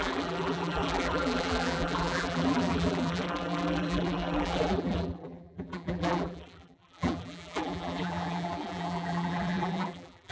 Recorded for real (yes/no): no